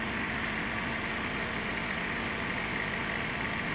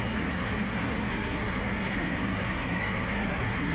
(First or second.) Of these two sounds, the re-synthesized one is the second